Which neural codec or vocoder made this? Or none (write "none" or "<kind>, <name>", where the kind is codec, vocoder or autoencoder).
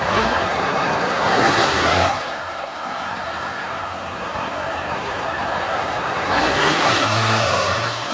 codec, SNAC